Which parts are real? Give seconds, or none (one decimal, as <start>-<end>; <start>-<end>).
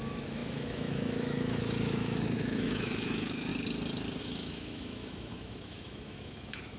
3.5-4.2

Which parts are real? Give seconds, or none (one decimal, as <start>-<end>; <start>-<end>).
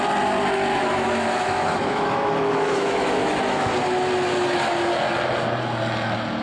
0.0-0.7; 3.7-6.4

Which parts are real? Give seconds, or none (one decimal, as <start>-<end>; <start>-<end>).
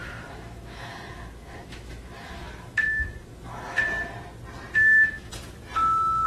3.8-4.8; 5.3-6.3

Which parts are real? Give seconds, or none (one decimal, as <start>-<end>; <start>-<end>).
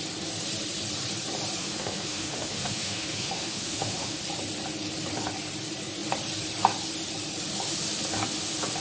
0.0-1.6; 4.2-8.8